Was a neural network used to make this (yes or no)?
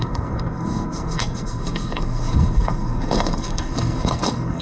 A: yes